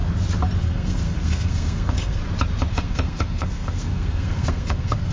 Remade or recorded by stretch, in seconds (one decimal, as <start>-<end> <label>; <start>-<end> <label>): 0.0-0.6 recorded; 0.6-2.2 remade; 2.2-2.7 recorded; 2.7-5.1 remade